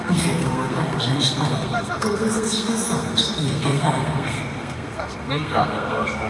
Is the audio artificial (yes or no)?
yes